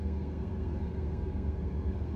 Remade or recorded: remade